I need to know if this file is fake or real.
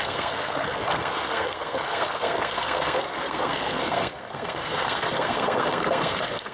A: fake